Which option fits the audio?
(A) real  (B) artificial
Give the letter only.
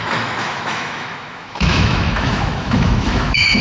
B